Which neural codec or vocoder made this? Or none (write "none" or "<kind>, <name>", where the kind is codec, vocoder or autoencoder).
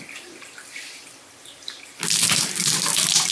none